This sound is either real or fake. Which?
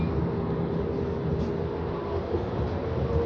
real